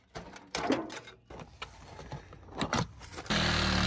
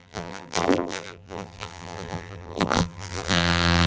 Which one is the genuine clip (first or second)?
first